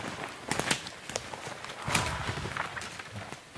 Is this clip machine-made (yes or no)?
no